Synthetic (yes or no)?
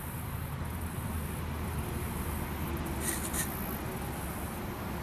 no